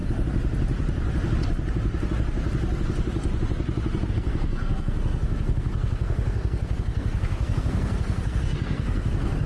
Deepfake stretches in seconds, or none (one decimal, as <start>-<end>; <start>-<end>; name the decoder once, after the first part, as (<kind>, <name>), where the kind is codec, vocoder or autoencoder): 4.1-9.5 (codec, SNAC)